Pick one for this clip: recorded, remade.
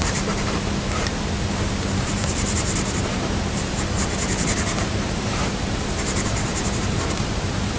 remade